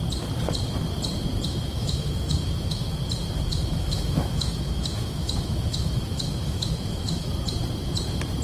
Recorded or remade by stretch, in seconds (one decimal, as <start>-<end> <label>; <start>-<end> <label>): 0.0-1.5 recorded; 1.5-3.0 remade; 3.0-3.5 recorded; 3.5-7.3 remade; 7.3-8.4 recorded